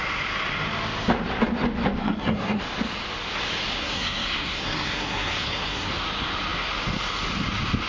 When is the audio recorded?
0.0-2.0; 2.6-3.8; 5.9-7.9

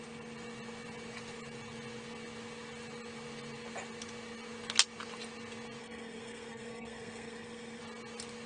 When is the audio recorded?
0.0-5.8; 7.8-8.5

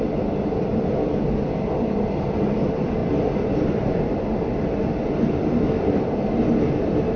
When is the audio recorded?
0.0-7.2

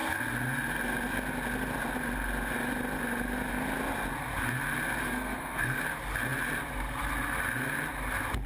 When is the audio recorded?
0.0-5.0; 5.8-8.5

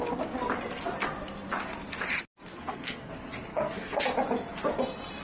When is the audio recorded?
0.0-2.5; 3.1-3.5; 4.0-5.2

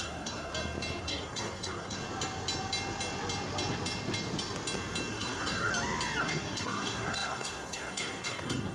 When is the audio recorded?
0.5-1.0; 2.0-5.1; 5.7-6.2

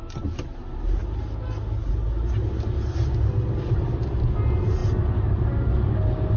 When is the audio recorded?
0.0-6.4

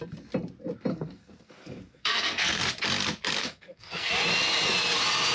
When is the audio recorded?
0.0-0.9; 2.6-3.4; 4.1-5.3